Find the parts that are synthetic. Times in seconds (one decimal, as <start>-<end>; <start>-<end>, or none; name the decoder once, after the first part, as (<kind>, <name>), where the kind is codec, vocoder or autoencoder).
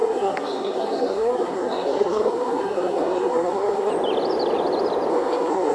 0.0-3.9 (codec, SNAC); 5.1-5.7